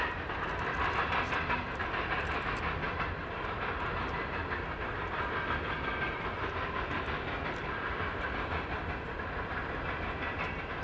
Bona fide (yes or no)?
yes